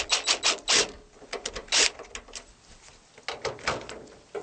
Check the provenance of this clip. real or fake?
real